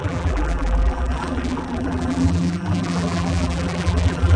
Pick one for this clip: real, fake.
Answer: fake